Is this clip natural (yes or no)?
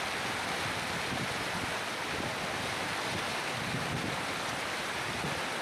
yes